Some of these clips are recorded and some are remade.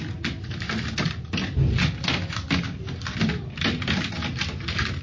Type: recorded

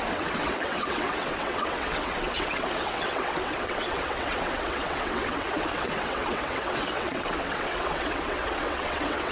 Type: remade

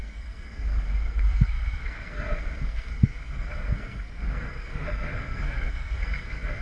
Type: remade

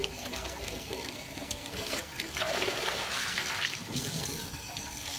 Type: remade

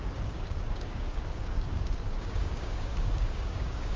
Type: remade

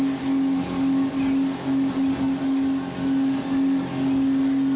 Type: recorded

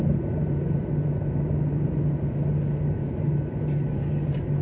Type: recorded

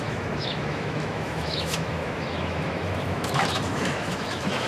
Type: remade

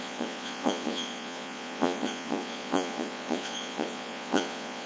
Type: remade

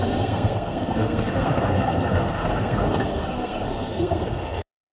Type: remade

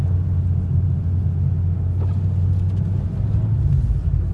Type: recorded